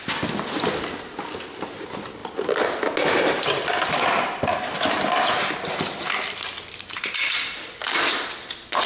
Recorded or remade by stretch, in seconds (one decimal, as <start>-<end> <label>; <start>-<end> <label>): 0.0-8.9 recorded